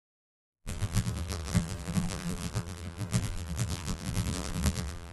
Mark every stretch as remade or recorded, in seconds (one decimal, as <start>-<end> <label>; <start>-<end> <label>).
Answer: 0.0-5.1 remade